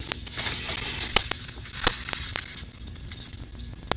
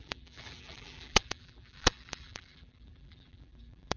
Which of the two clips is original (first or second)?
first